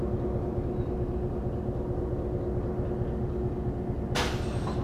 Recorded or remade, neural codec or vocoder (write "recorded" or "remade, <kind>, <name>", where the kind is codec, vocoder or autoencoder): recorded